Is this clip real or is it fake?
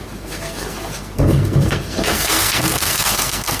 fake